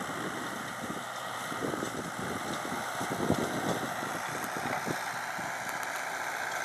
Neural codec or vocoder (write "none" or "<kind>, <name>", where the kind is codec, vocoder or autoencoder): none